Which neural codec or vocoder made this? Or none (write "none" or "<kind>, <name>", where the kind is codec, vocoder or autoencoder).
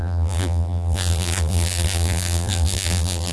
vocoder, BigVGAN v2